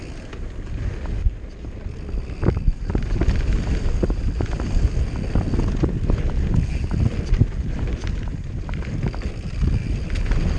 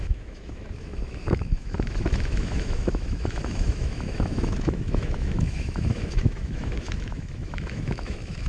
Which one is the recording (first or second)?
first